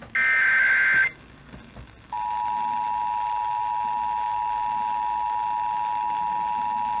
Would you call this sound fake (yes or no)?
no